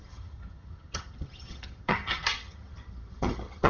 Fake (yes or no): yes